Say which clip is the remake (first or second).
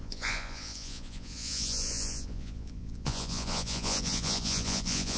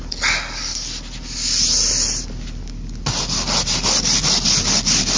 first